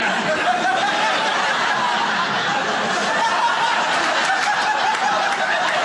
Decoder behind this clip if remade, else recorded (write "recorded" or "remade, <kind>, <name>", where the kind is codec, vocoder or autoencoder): recorded